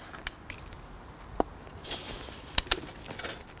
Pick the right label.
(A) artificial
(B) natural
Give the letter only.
B